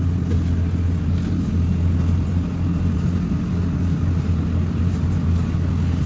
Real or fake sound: real